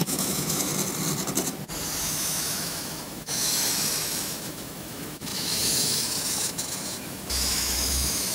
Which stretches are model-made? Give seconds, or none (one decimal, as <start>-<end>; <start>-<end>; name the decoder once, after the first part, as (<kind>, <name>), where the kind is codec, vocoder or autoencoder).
0.0-0.7 (autoencoder, DAC-VAE); 2.0-8.3